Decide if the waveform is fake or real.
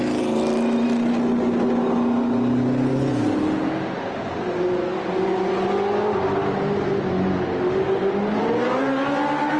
real